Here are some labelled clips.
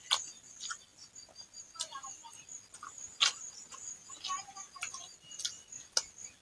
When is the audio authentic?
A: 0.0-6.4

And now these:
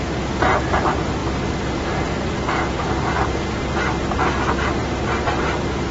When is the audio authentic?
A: 0.0-4.8